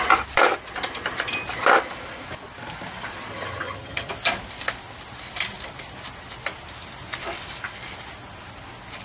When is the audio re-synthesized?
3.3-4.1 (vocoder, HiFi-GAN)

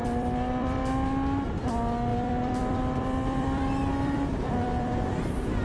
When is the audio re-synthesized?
0.0-0.8 (vocoder, BigVGAN v2); 2.1-5.6

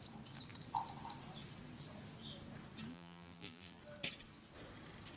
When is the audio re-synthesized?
2.9-3.8 (vocoder, BigVGAN v2)